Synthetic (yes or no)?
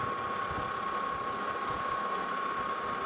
no